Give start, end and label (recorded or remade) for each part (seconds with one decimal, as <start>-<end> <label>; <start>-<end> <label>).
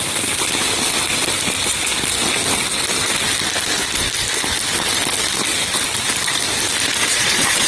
0.0-7.0 recorded; 7.0-7.7 remade